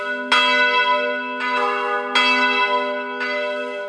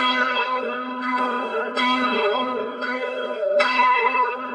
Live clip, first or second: first